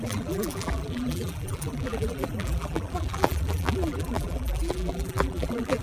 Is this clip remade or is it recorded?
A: remade